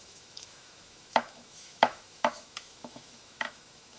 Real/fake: fake